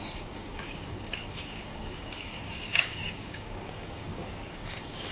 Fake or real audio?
fake